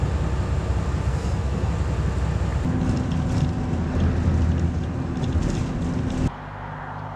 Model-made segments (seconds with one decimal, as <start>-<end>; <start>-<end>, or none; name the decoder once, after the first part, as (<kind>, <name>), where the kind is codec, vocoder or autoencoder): 1.1-1.7 (codec, SNAC)